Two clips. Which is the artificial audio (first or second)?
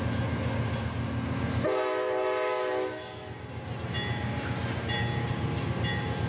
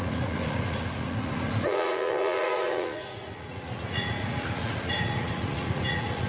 second